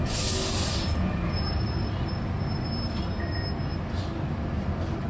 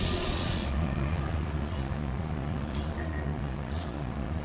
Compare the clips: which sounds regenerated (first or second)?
second